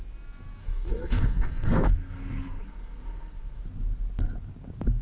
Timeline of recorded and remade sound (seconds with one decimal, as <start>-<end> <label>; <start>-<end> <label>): 0.0-0.6 recorded; 0.6-3.6 remade; 3.6-5.0 recorded